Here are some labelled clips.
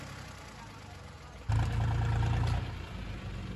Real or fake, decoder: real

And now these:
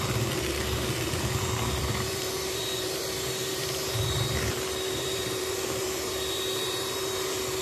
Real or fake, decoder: fake, vocoder, BigVGAN v2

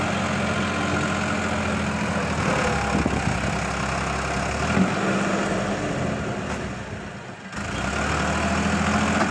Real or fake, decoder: real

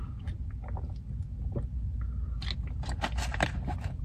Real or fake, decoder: real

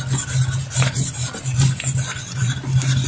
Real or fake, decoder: real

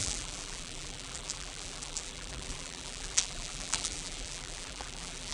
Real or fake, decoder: fake, vocoder, BigVGAN v2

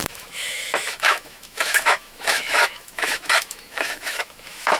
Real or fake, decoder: fake, autoencoder, DAC-VAE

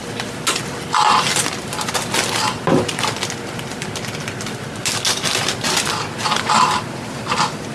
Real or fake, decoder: real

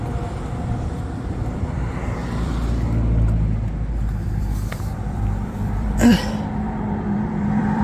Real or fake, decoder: fake, vocoder, BigVGAN v2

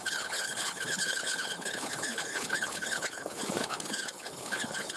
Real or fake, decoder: fake, codec, HILCodec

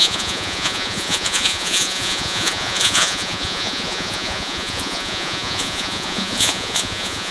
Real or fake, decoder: fake, vocoder, Vocos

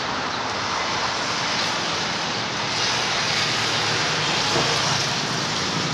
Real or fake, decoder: real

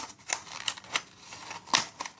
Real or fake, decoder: real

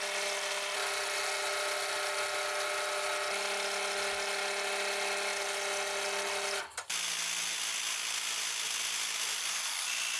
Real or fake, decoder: real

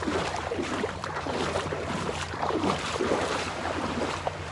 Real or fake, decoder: fake, vocoder, BigVGAN v2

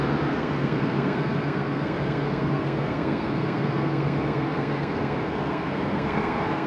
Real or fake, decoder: fake, codec, SNAC